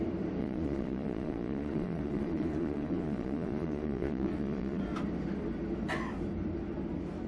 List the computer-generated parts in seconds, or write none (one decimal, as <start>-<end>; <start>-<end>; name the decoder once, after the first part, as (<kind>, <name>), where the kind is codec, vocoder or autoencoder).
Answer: 0.4-4.8 (vocoder, Vocos)